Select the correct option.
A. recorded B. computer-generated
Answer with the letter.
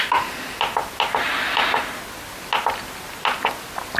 A